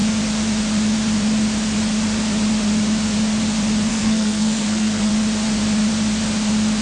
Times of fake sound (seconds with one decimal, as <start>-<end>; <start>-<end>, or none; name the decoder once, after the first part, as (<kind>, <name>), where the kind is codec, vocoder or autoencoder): 3.9-5.1 (codec, SNAC)